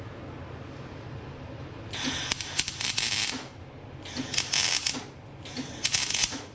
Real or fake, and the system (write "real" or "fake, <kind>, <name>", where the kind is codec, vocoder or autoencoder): real